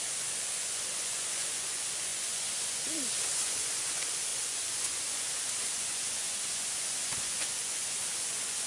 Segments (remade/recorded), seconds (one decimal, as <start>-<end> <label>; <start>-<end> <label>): 0.0-8.7 remade